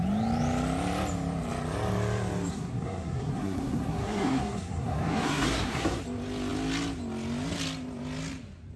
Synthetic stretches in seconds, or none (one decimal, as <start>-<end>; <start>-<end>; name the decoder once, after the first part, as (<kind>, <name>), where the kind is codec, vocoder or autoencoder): 2.5-6.0 (codec, SNAC)